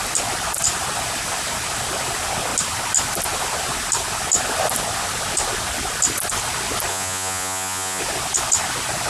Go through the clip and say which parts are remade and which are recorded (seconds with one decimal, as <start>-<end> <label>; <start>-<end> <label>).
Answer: 0.0-6.9 recorded; 6.9-8.0 remade; 8.0-9.1 recorded